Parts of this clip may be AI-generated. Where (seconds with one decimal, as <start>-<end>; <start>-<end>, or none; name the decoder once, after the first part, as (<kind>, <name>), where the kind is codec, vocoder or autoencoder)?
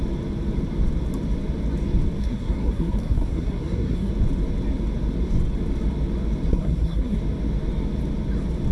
2.2-4.1 (codec, SNAC); 6.5-7.2